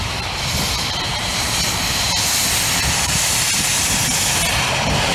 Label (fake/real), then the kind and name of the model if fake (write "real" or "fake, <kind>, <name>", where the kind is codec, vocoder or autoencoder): real